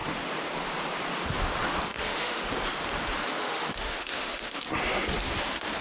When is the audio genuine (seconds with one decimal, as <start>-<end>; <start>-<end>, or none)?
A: 0.0-1.9; 2.4-3.4; 4.6-5.8